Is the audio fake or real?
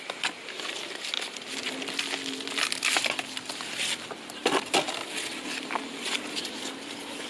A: real